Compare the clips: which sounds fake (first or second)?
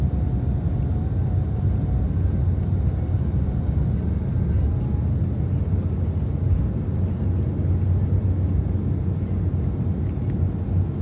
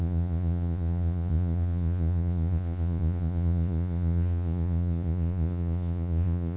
second